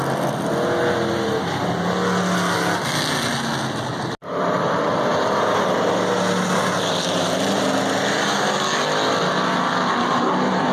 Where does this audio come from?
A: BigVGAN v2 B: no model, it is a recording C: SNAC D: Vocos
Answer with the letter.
B